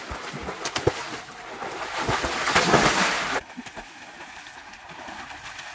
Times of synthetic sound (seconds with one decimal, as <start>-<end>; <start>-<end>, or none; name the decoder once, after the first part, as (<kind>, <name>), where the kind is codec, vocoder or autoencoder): 0.0-0.4 (vocoder, BigVGAN v2); 1.1-5.7